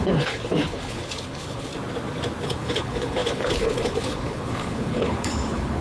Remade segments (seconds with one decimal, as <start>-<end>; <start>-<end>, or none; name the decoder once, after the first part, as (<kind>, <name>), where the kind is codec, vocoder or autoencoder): 0.0-1.7 (codec, HILCodec); 2.4-5.8

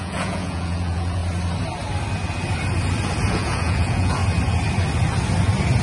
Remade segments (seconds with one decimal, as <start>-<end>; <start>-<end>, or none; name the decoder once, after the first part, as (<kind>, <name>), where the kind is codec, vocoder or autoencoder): 0.0-1.2 (vocoder, Vocos); 3.3-4.2

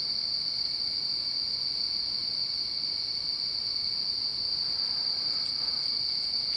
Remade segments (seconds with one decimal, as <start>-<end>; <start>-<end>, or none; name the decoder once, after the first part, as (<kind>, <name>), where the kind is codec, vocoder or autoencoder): none

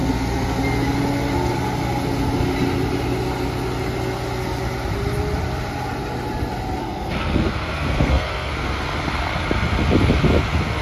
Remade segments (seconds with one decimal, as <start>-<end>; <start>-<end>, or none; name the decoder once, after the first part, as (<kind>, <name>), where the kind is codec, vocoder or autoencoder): 6.8-8.8 (codec, SNAC)

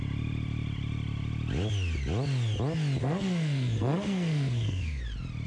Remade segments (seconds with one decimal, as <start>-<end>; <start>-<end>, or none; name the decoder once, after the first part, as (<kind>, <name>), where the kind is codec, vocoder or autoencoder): 3.0-5.0 (codec, SNAC)

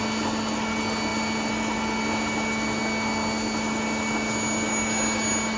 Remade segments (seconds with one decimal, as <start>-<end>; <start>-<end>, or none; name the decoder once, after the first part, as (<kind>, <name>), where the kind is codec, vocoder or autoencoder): none

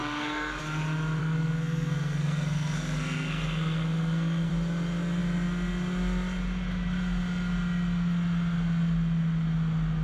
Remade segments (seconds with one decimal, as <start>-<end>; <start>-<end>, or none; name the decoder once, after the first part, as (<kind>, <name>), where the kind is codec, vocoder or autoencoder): 0.0-0.6 (codec, SNAC); 1.2-4.5

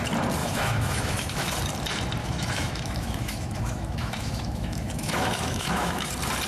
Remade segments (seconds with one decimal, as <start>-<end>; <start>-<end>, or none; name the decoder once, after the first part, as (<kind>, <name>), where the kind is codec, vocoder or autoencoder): 0.4-1.5 (autoencoder, DAC-VAE); 2.2-6.1